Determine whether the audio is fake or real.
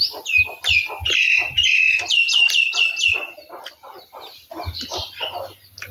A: real